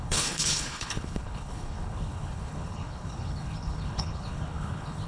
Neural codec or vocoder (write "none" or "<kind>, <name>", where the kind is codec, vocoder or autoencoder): codec, HILCodec